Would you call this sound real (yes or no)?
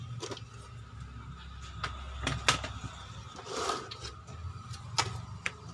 yes